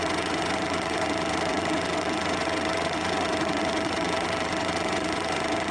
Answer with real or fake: fake